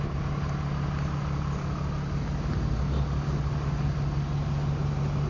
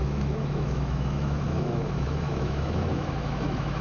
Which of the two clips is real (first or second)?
first